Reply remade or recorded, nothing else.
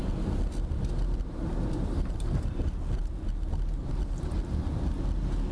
recorded